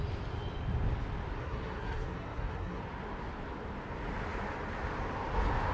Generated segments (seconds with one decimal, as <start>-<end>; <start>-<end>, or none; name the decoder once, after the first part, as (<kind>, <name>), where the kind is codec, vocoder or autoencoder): 1.4-2.8 (codec, SNAC)